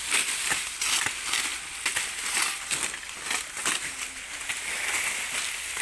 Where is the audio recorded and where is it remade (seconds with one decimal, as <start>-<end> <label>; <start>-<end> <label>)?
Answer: 0.0-5.8 recorded